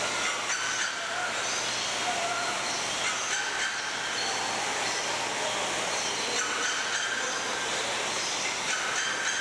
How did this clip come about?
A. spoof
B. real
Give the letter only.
B